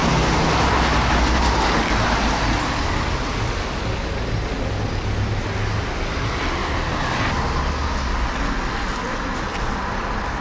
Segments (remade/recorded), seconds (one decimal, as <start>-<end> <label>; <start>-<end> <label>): 0.0-10.4 recorded